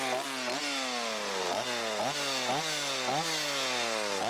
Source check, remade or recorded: recorded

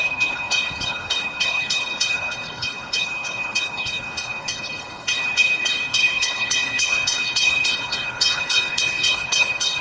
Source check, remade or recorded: remade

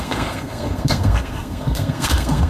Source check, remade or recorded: remade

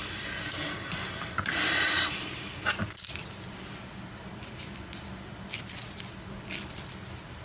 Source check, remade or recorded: remade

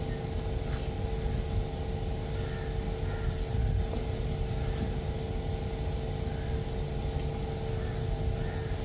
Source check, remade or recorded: recorded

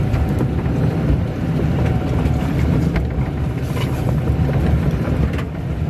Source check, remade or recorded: remade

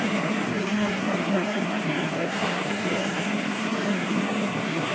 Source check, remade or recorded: remade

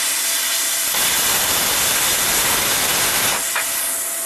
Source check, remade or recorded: recorded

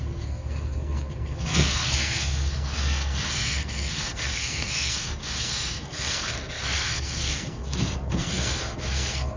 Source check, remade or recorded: remade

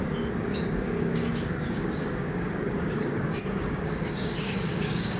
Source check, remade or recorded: remade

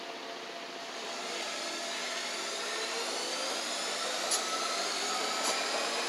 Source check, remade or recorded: recorded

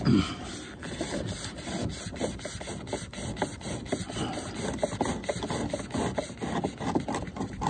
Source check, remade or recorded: recorded